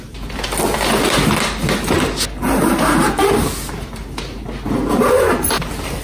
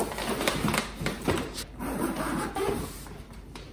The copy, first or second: second